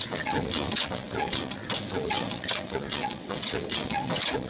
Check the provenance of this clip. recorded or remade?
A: remade